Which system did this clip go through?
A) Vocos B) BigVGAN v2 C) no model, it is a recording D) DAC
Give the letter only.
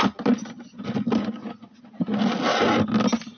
C